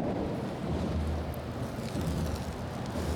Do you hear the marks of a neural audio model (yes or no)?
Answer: no